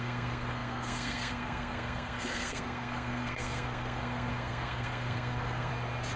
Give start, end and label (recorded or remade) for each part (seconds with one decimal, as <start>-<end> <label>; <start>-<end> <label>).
0.0-5.7 remade; 5.7-6.2 recorded